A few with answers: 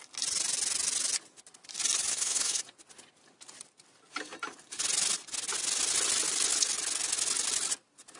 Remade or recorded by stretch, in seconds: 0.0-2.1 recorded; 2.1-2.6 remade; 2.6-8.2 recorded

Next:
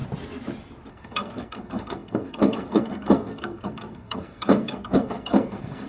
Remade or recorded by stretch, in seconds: 0.0-0.9 recorded; 0.9-5.9 remade

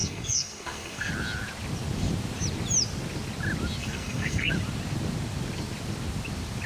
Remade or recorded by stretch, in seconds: 0.0-1.1 remade; 1.1-3.8 recorded; 3.8-4.5 remade; 4.5-6.7 recorded

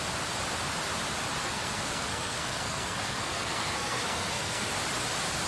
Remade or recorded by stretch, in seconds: 0.0-1.4 recorded; 1.4-4.7 remade; 4.7-5.5 recorded

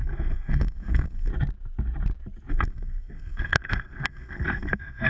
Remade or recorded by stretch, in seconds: 0.0-1.3 remade; 1.3-2.5 recorded; 2.5-5.1 remade